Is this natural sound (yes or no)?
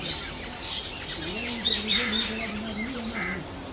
no